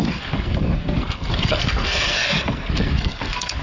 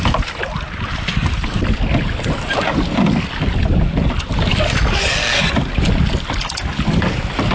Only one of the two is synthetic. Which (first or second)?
first